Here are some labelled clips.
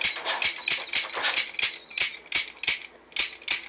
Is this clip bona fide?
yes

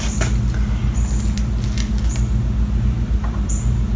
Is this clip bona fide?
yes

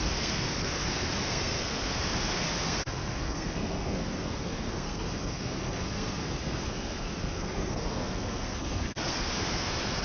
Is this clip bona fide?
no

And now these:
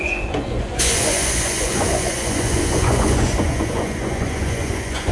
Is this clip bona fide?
no